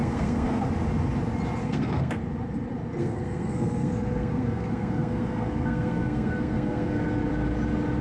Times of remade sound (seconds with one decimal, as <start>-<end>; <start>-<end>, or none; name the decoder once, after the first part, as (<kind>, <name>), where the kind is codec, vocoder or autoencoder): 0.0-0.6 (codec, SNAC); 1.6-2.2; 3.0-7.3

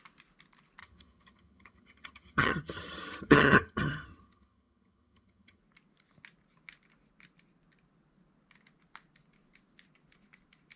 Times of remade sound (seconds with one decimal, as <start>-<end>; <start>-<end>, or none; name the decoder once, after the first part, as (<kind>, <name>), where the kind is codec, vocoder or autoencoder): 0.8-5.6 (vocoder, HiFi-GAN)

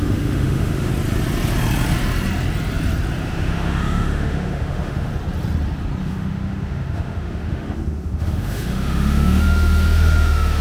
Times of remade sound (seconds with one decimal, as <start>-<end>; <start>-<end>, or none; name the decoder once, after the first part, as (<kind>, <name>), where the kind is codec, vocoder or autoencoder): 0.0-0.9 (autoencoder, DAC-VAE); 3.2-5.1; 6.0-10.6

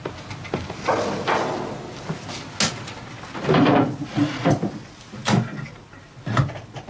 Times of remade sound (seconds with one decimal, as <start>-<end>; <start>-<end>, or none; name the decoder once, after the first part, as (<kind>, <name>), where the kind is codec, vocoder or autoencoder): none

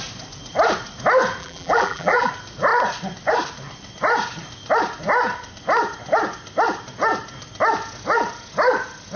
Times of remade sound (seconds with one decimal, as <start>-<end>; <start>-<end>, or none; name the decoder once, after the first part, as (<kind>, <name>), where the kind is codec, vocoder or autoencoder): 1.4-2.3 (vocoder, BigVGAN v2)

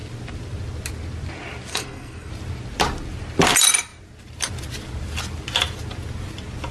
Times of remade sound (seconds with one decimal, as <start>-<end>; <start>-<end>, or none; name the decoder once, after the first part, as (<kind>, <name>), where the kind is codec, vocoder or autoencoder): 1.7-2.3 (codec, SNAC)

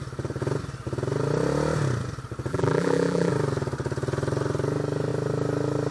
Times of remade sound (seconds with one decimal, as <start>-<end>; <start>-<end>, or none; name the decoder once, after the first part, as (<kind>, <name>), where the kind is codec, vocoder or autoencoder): 2.5-3.3 (vocoder, BigVGAN v2)